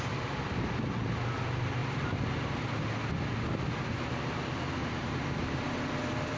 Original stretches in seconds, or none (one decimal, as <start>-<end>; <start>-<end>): 0.0-1.8; 2.5-4.8; 5.9-6.4